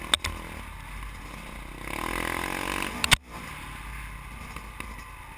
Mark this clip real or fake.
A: real